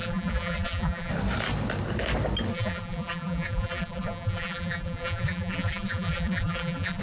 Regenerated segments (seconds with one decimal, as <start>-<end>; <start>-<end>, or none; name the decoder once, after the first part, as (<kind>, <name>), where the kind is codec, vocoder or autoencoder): 0.0-1.1 (vocoder, BigVGAN v2); 2.5-7.0